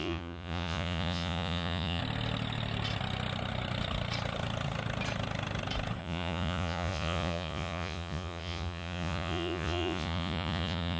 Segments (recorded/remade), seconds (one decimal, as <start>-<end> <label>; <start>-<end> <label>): 0.0-2.0 remade; 2.0-6.0 recorded; 6.0-11.0 remade